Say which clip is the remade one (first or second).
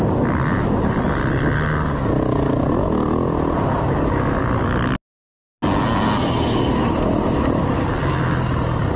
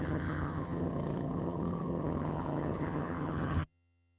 second